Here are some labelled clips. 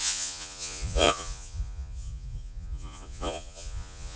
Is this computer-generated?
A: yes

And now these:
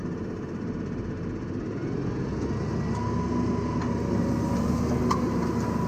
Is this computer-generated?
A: no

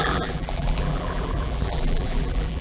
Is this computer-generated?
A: yes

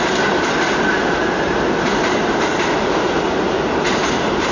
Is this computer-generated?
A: no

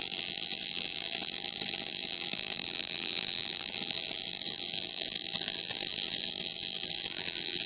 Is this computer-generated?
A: yes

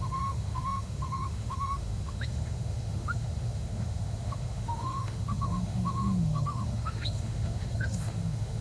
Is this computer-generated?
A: yes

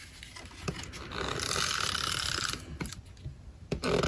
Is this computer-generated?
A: no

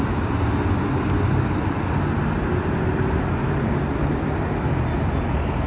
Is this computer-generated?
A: no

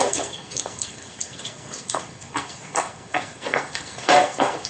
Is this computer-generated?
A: yes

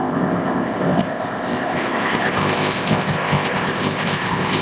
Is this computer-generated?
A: yes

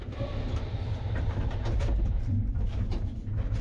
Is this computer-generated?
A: yes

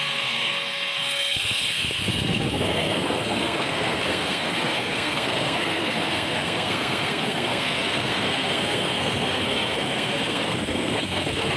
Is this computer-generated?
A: yes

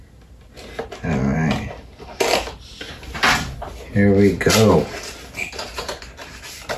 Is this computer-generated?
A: no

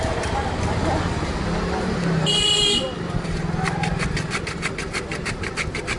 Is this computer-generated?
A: no